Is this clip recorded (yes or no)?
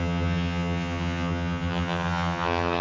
no